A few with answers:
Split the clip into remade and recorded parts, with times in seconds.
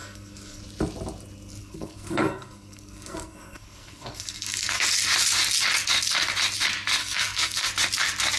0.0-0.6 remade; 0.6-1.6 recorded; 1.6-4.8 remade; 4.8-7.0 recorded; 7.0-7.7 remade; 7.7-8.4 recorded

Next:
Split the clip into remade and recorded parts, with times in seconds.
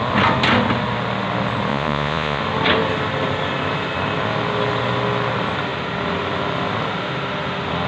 0.0-1.7 recorded; 1.7-2.4 remade; 2.4-7.9 recorded